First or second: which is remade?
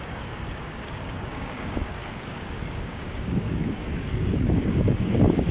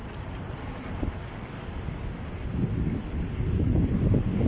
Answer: first